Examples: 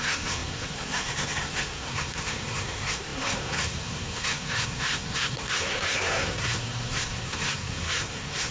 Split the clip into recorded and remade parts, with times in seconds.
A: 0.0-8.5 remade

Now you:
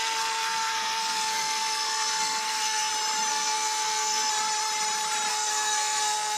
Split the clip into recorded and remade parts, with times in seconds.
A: 0.0-2.9 remade; 2.9-3.3 recorded; 3.3-4.3 remade; 4.3-5.3 recorded; 5.3-6.4 remade

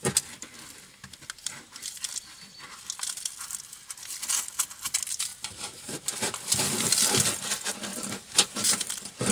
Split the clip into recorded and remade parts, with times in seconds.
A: 0.0-1.4 recorded; 1.4-2.1 remade; 2.1-5.3 recorded; 5.3-6.5 remade; 6.5-7.9 recorded; 7.9-9.3 remade

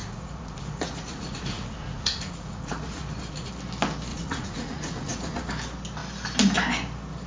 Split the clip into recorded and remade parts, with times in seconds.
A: 0.0-3.5 remade; 3.5-4.1 recorded; 4.1-5.5 remade; 5.5-7.3 recorded

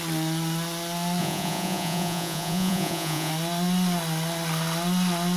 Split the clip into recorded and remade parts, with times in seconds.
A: 0.0-1.2 recorded; 1.2-3.3 remade; 3.3-5.4 recorded

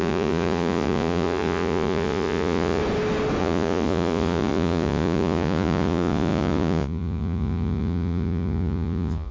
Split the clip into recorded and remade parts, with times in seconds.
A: 0.0-2.8 remade; 2.8-3.4 recorded; 3.4-9.3 remade